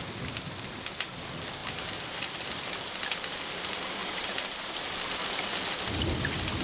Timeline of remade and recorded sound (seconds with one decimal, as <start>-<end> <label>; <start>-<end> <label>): 0.0-4.0 recorded; 4.0-4.7 remade; 4.7-6.6 recorded